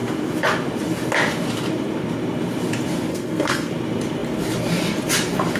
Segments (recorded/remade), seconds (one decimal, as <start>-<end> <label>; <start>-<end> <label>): 0.0-3.1 recorded; 3.1-3.7 remade; 3.7-5.6 recorded